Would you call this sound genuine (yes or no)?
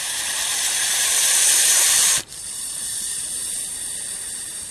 no